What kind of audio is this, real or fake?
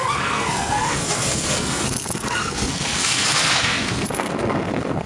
fake